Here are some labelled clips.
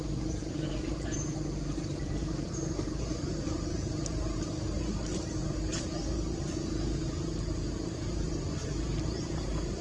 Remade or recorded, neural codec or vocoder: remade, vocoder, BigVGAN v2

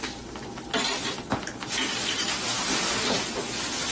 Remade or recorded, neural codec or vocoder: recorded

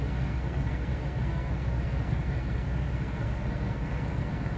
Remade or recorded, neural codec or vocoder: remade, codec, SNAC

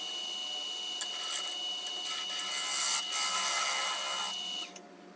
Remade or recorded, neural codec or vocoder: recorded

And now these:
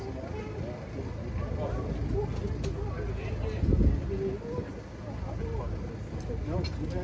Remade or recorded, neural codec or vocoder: recorded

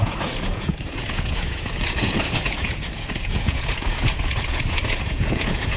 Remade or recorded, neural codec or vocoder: remade, vocoder, Vocos